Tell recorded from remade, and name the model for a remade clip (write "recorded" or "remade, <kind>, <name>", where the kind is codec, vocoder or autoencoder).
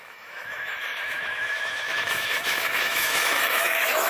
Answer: remade, autoencoder, DAC-VAE